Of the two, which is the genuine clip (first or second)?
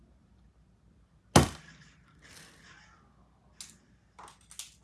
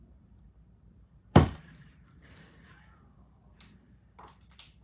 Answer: first